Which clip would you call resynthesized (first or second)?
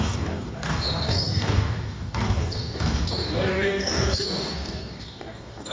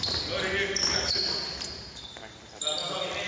first